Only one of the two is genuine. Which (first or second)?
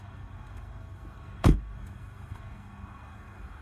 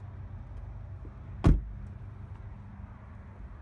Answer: second